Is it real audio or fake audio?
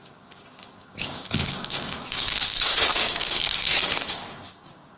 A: fake